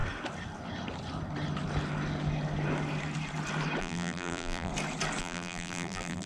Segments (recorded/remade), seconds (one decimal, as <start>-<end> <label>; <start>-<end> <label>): 0.0-3.8 recorded; 3.8-4.7 remade; 4.7-5.2 recorded; 5.2-6.3 remade